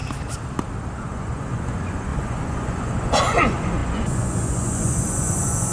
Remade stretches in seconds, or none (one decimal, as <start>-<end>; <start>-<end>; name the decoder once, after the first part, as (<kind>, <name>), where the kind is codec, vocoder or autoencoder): 0.9-5.7 (vocoder, Vocos)